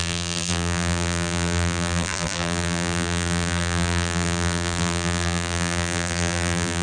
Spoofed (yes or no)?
yes